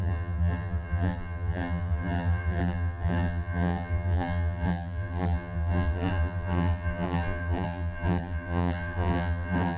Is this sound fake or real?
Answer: fake